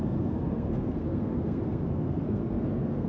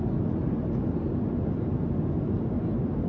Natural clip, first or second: second